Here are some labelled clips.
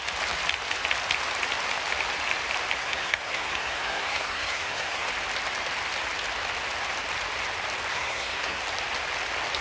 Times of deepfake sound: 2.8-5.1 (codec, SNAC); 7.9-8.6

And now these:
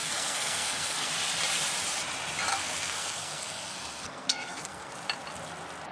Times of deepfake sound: 0.0-1.1 (codec, SNAC); 2.5-4.9

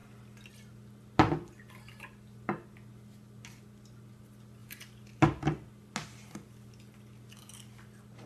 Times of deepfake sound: none

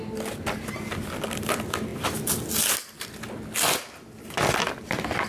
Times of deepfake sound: none

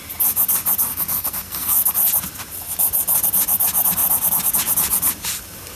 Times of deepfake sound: 0.9-1.9 (codec, SNAC)

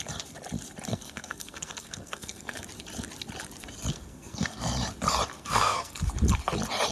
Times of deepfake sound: 0.9-2.6 (codec, SNAC); 3.9-4.6; 5.3-6.1

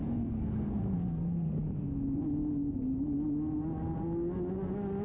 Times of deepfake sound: 0.0-1.6 (codec, SNAC)